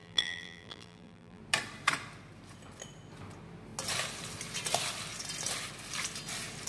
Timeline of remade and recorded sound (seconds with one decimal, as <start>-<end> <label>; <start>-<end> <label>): 0.0-1.4 remade; 1.4-6.7 recorded